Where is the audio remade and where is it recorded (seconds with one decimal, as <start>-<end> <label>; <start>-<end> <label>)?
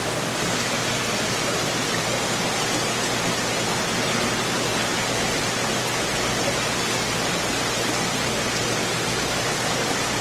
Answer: 0.0-10.2 recorded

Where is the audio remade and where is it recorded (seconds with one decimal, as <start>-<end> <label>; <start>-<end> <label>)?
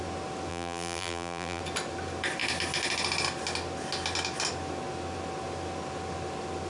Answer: 0.0-0.5 recorded; 0.5-1.6 remade; 1.6-6.7 recorded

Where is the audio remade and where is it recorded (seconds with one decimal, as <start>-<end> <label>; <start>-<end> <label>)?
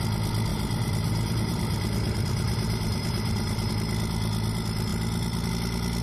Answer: 0.0-0.5 recorded; 0.5-3.7 remade; 3.7-6.0 recorded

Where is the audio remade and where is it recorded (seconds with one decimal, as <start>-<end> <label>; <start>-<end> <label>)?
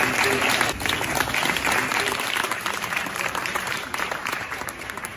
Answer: 0.0-1.9 recorded; 1.9-5.2 remade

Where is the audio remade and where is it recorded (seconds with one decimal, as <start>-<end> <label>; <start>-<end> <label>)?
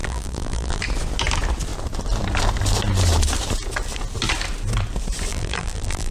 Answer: 0.0-0.8 remade; 0.8-5.3 recorded; 5.3-6.1 remade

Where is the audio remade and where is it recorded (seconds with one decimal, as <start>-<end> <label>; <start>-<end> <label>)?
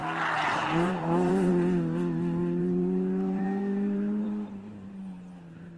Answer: 0.0-0.7 recorded; 0.7-1.5 remade; 1.5-2.6 recorded; 2.6-5.0 remade; 5.0-5.8 recorded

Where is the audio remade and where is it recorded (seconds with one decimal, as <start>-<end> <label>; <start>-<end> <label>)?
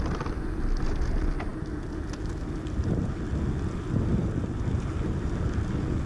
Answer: 0.0-6.1 recorded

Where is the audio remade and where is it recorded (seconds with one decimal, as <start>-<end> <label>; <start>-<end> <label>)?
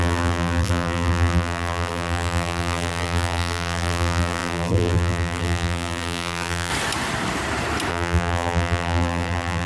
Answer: 0.0-6.7 remade; 6.7-7.9 recorded; 7.9-9.7 remade